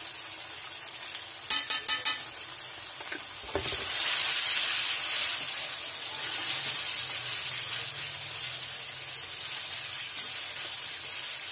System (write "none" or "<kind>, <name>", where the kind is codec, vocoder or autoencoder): none